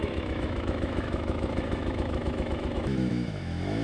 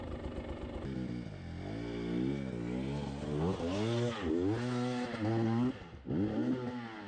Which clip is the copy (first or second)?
first